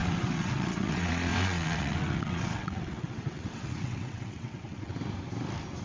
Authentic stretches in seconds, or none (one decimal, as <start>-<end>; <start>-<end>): 4.9-5.8